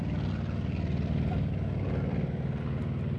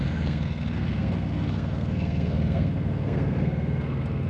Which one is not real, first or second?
second